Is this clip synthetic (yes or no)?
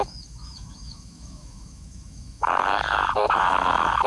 yes